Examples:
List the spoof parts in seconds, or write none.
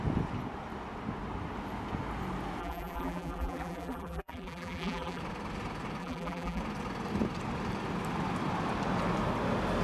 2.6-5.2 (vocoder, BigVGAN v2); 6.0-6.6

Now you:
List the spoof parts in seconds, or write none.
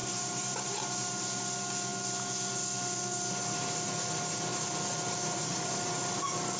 0.0-1.4 (vocoder, BigVGAN v2)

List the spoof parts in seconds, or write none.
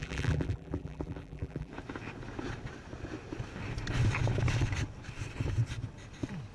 0.0-1.7 (vocoder, BigVGAN v2)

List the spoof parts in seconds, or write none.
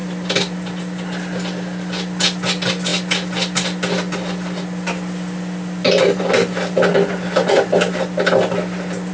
0.0-0.8 (vocoder, BigVGAN v2); 6.9-9.1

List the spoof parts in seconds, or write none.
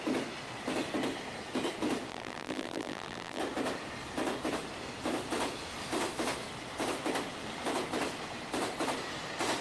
2.1-3.4 (vocoder, BigVGAN v2)